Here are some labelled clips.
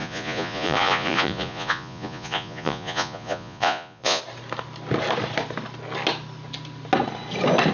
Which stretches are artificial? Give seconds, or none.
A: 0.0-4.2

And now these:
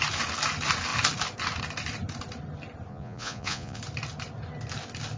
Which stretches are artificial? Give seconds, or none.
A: 2.9-3.8

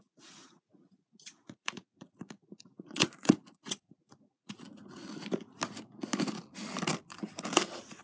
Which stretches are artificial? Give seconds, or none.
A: 0.0-5.0